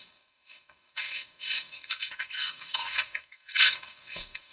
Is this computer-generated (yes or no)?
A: yes